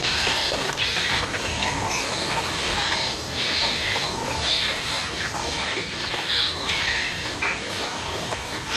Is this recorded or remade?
remade